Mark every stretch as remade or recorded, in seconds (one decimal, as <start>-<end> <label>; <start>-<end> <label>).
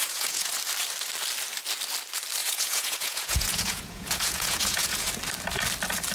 0.0-0.5 remade; 0.5-2.4 recorded; 2.4-5.1 remade; 5.1-6.1 recorded